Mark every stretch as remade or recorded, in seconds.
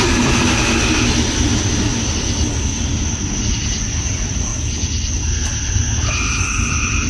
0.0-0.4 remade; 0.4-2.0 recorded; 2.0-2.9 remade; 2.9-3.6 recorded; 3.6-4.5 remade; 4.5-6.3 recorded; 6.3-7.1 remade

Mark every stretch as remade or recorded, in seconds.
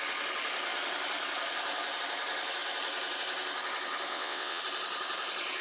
0.0-4.1 recorded; 4.1-4.6 remade; 4.6-5.6 recorded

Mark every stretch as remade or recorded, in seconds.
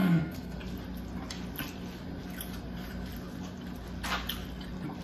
0.0-0.6 remade; 0.6-5.0 recorded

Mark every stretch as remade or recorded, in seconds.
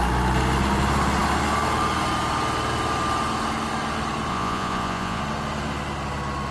0.0-4.3 recorded; 4.3-5.2 remade; 5.2-6.5 recorded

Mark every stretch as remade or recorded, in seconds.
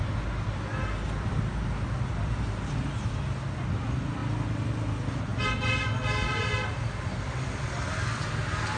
0.0-8.8 recorded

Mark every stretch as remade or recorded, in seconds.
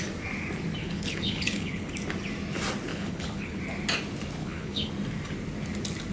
0.0-0.8 recorded; 0.8-1.9 remade; 1.9-2.9 recorded; 2.9-3.6 remade; 3.6-4.4 recorded; 4.4-4.9 remade; 4.9-6.1 recorded